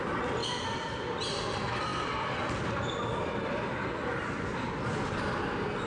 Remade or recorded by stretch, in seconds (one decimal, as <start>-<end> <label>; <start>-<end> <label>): 0.0-0.4 recorded; 0.4-1.2 remade; 1.2-1.9 recorded; 1.9-5.4 remade; 5.4-5.9 recorded